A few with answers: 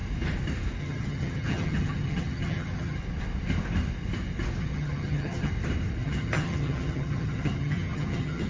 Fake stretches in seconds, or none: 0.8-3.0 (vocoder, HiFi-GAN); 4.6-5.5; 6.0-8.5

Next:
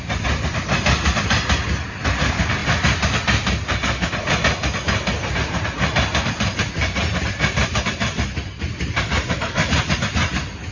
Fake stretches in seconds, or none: none

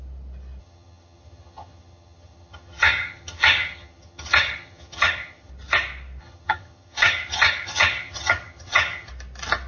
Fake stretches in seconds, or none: 0.6-5.5 (vocoder, HiFi-GAN); 6.2-9.1

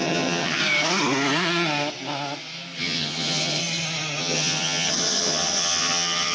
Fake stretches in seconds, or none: 0.0-0.6 (vocoder, HiFi-GAN); 2.8-3.6; 4.2-6.3

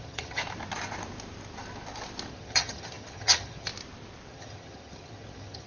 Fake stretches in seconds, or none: 0.0-0.4 (vocoder, HiFi-GAN); 2.3-3.7; 4.3-5.7